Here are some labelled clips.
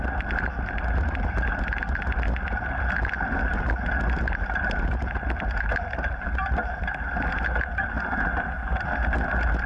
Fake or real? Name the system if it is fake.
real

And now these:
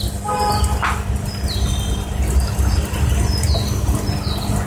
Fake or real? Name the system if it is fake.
real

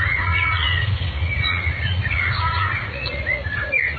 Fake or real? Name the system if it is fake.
fake, vocoder, Vocos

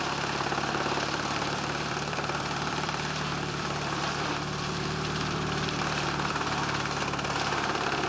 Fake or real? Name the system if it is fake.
fake, vocoder, BigVGAN v2